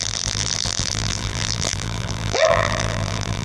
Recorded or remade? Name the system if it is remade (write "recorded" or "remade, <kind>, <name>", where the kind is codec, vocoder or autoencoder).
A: remade, vocoder, BigVGAN v2